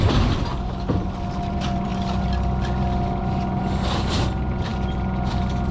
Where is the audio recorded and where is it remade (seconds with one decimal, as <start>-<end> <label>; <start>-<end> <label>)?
0.0-0.5 remade; 0.5-1.5 recorded; 1.5-1.9 remade; 1.9-3.2 recorded; 3.2-5.7 remade

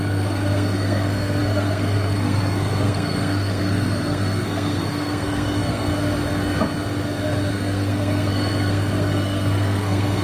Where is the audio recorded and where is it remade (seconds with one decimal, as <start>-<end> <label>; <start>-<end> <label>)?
0.0-5.9 remade; 5.9-7.5 recorded; 7.5-10.2 remade

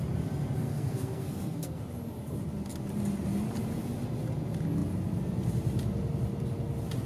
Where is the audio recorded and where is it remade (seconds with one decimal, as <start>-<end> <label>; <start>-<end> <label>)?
0.0-0.6 recorded; 0.6-1.8 remade; 1.8-7.1 recorded

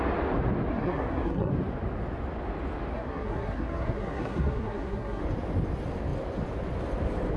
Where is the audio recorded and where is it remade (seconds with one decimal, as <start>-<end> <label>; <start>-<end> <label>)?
0.0-0.7 recorded; 0.7-1.5 remade; 1.5-2.9 recorded; 2.9-5.2 remade; 5.2-7.4 recorded

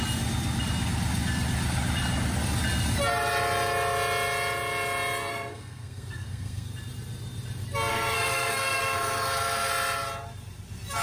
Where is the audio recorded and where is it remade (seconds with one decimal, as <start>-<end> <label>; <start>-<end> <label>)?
0.0-5.3 recorded; 5.3-6.7 remade; 6.7-7.9 recorded; 7.9-9.7 remade; 9.7-11.0 recorded